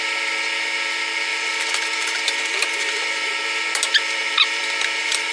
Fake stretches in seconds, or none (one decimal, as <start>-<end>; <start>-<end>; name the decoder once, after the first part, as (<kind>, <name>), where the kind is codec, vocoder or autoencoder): 1.3-3.3 (vocoder, BigVGAN v2); 3.9-5.3